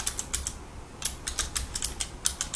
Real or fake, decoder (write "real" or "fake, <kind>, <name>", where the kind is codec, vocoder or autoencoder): real